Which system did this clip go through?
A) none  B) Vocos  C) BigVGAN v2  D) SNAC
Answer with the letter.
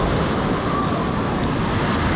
A